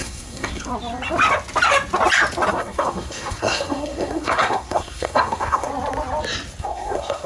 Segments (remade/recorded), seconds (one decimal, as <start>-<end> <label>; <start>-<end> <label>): 0.0-0.7 remade; 0.7-2.5 recorded; 2.5-5.7 remade; 5.7-6.6 recorded; 6.6-7.3 remade